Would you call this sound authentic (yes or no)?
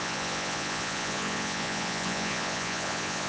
no